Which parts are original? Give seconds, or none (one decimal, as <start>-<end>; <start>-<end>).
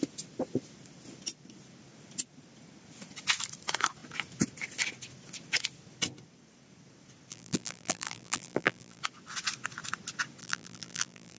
0.0-7.3; 9.0-10.4